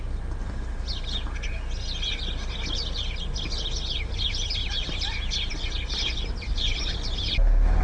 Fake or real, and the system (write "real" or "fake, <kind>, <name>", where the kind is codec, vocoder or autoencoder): real